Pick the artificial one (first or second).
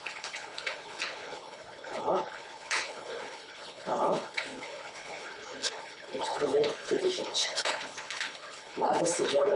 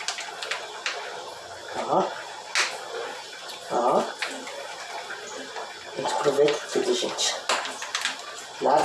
first